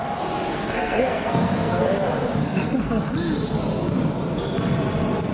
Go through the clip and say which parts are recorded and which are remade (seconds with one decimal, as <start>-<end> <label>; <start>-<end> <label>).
0.0-0.5 recorded; 0.5-1.9 remade; 1.9-2.4 recorded; 2.4-3.1 remade; 3.1-5.3 recorded